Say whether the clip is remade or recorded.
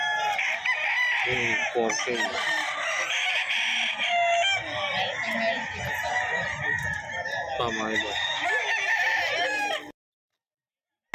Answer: recorded